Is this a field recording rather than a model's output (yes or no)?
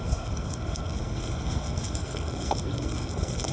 no